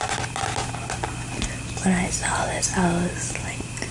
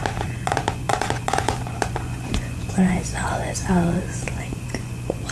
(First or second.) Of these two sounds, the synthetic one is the second